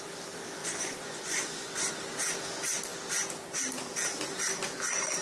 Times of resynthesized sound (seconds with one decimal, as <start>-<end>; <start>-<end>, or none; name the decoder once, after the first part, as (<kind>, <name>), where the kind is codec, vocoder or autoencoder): 0.6-1.9 (vocoder, Vocos)